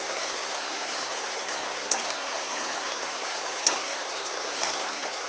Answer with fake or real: fake